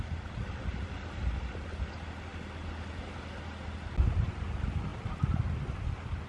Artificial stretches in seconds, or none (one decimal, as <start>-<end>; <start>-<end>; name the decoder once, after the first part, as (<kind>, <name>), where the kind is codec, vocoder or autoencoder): none